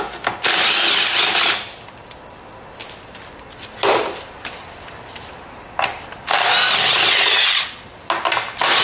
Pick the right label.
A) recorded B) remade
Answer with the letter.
A